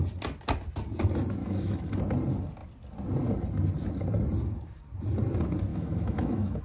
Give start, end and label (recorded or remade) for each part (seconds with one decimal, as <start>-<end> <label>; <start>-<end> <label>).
0.0-1.4 recorded; 1.4-2.0 remade; 2.0-5.7 recorded; 5.7-6.6 remade